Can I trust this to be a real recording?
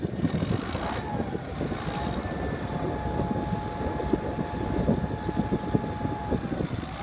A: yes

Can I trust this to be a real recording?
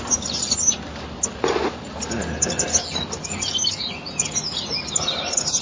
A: yes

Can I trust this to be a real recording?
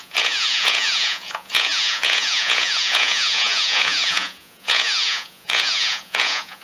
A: no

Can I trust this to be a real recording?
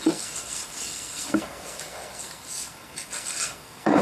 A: no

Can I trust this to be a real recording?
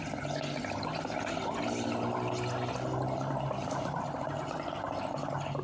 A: yes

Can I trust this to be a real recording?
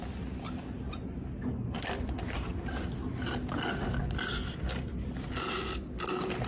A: yes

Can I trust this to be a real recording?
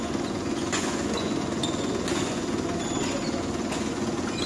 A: no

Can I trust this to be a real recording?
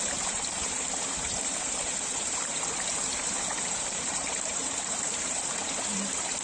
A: no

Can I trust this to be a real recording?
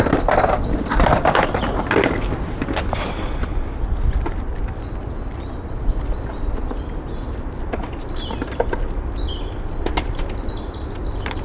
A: yes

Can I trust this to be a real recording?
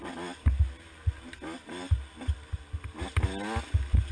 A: yes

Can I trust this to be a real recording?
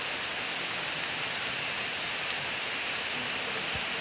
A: yes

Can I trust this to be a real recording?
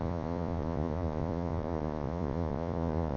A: no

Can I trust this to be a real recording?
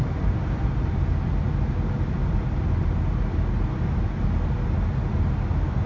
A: yes